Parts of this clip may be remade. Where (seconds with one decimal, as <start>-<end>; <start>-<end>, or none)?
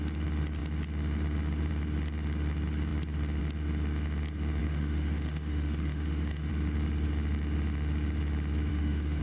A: 4.6-6.5; 8.7-9.2